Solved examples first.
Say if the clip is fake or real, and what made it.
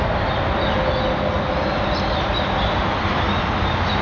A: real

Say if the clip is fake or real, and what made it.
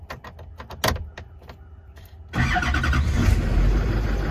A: real